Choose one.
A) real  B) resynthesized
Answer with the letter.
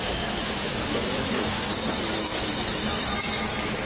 B